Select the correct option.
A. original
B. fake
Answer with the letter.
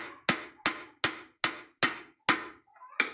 A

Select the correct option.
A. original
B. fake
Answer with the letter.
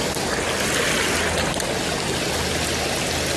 A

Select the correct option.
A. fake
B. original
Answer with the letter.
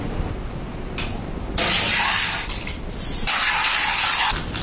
B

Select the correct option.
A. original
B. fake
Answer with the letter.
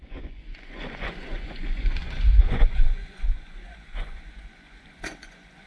B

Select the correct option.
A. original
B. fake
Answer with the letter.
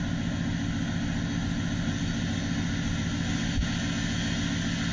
A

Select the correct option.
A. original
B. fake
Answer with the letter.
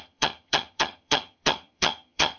B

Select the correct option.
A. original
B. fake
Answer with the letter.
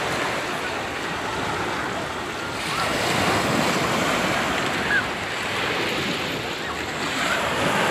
A